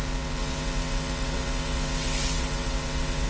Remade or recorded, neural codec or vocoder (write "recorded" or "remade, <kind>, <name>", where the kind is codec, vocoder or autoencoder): remade, vocoder, WaveNeXt